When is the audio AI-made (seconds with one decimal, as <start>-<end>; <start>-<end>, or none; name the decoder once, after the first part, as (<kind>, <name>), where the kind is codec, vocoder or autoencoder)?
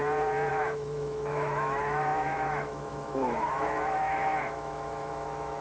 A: 0.5-5.6 (autoencoder, DAC-VAE)